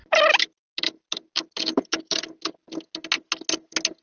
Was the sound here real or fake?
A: real